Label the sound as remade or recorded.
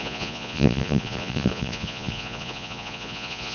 remade